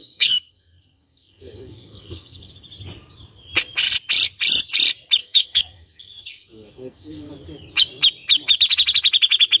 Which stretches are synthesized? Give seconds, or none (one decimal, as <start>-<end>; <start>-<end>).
0.0-2.5; 5.2-7.3